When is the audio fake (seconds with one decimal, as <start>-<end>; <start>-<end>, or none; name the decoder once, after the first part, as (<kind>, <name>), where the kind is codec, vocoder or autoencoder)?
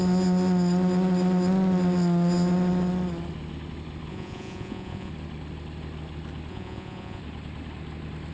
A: 4.1-5.1 (vocoder, Vocos); 6.5-7.2